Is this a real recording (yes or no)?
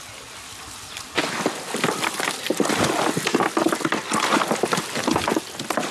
yes